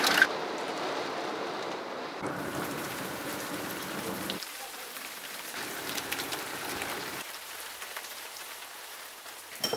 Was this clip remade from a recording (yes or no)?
yes